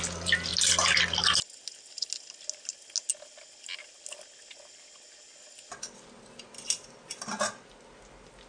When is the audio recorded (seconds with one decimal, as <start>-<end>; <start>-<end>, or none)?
0.0-8.5